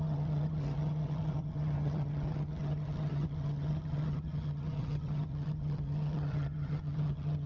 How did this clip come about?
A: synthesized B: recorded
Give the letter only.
A